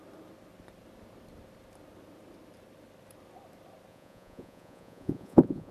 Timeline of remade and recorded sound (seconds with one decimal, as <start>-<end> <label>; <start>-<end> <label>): 0.0-3.9 recorded; 3.9-5.7 remade